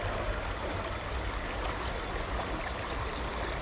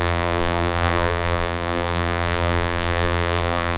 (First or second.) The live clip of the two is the first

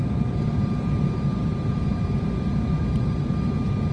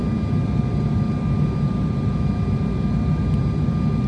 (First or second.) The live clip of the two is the second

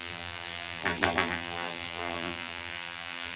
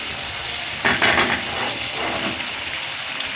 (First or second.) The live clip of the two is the second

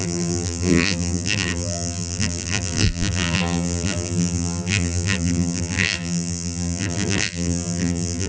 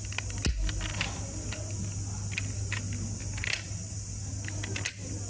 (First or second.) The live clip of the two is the second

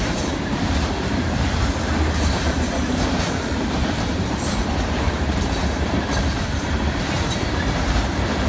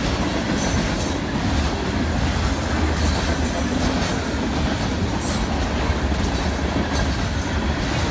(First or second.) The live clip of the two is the second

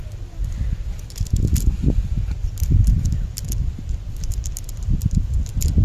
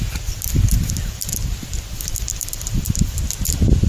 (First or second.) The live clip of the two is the first